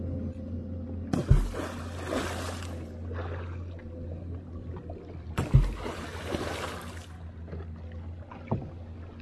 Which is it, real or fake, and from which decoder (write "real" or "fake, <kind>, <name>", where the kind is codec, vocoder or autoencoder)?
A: real